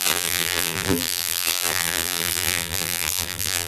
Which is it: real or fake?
fake